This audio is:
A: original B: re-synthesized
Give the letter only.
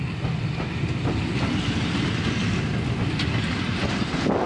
A